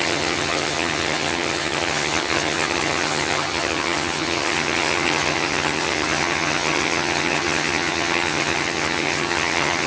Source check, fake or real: fake